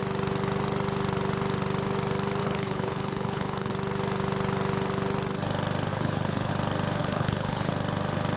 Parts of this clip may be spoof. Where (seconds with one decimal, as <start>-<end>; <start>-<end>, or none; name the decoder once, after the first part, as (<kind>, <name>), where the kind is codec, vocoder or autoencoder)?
2.4-3.7 (codec, HILCodec); 5.9-6.5; 7.0-7.7